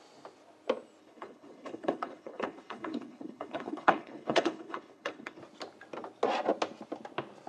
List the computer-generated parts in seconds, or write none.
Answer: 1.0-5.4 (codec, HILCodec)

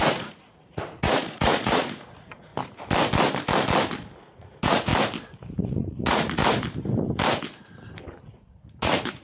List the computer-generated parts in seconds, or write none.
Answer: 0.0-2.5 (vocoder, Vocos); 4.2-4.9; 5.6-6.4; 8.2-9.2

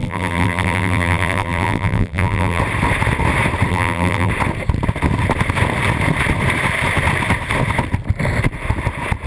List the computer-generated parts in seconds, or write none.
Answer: 0.0-2.6 (vocoder, BigVGAN v2); 3.7-4.3

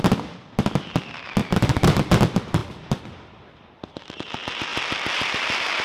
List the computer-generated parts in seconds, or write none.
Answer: 1.4-2.2 (vocoder, BigVGAN v2); 2.6-4.1; 4.7-5.3

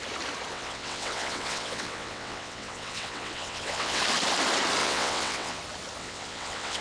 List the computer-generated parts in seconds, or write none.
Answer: 0.5-4.0 (vocoder, WaveNeXt); 4.8-5.6; 6.0-6.8